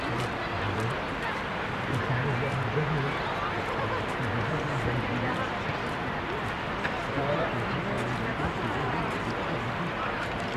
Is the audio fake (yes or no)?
no